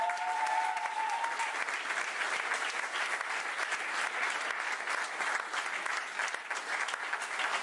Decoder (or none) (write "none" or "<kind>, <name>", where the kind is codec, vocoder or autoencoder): none